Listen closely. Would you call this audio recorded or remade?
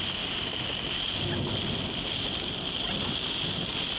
recorded